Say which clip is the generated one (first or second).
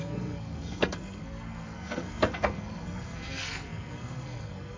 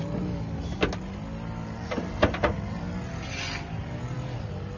first